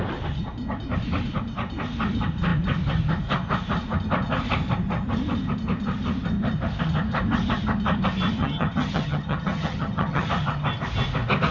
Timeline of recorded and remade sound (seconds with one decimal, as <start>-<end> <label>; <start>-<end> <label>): 0.0-8.4 recorded; 8.4-10.3 remade; 10.3-11.5 recorded